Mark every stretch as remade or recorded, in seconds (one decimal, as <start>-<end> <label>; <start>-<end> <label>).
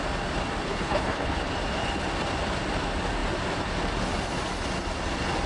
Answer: 0.0-0.7 recorded; 0.7-1.4 remade; 1.4-5.5 recorded